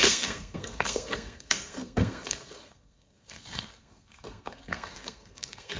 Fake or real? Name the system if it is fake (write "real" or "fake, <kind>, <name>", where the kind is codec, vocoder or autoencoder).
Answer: fake, codec, SNAC